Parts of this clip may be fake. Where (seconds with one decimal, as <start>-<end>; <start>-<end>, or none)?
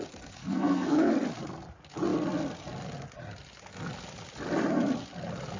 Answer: 0.4-1.1